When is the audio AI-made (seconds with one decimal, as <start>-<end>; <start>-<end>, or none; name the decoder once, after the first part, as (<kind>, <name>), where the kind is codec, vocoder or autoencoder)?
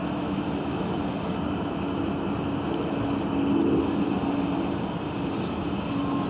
0.0-1.0 (autoencoder, DAC-VAE)